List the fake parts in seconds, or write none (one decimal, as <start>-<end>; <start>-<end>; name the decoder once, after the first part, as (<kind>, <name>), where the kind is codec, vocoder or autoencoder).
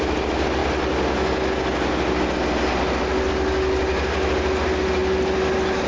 none